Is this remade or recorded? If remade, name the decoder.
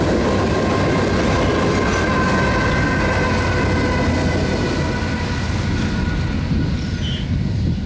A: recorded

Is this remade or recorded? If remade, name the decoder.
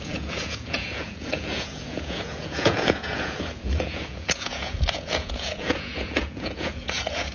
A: remade, vocoder, Vocos